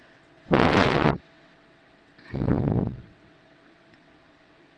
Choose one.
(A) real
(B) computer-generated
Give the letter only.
B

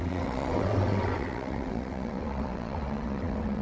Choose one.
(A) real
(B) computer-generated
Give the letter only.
B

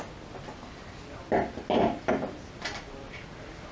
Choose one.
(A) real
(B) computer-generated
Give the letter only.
A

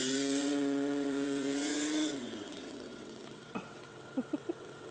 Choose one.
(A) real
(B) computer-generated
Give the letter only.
B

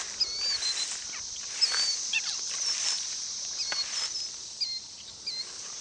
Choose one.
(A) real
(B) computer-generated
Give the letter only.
A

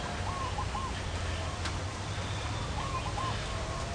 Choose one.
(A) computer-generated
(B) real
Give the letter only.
B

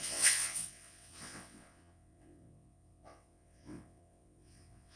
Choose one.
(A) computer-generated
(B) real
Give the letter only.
A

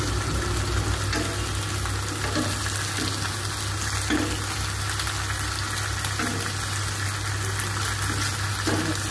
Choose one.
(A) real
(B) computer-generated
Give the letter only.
A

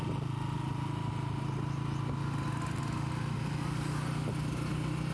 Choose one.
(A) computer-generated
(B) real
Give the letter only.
B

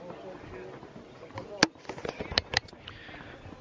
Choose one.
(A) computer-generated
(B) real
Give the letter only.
B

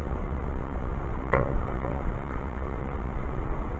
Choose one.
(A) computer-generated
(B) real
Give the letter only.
A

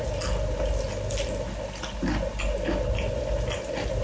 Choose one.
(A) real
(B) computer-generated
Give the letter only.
A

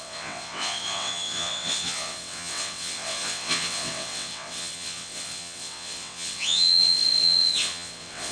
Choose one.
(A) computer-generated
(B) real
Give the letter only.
A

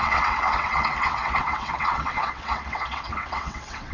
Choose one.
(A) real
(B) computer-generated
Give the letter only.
B